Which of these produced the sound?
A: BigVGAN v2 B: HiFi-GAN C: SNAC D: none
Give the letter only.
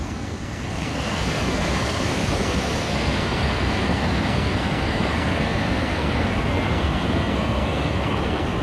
C